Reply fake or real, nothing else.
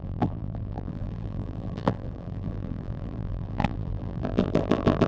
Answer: fake